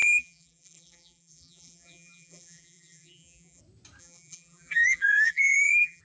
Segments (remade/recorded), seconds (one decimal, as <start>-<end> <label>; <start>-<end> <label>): 0.0-3.6 remade; 3.6-4.0 recorded; 4.0-6.0 remade